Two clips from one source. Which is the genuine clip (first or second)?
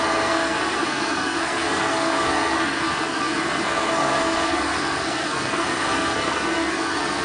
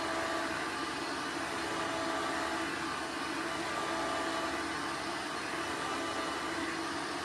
second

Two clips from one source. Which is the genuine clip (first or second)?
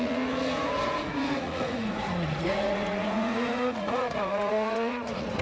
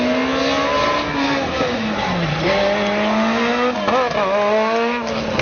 second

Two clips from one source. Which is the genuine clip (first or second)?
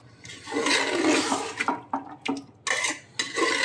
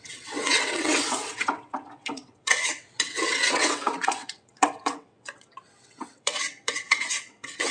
first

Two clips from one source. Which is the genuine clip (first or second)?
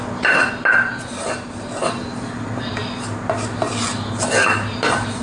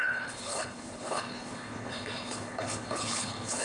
first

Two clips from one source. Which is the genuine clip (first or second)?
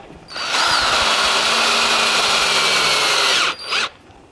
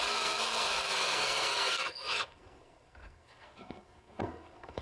first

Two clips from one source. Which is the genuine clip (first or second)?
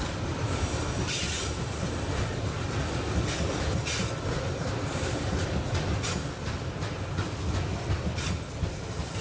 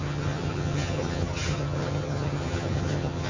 first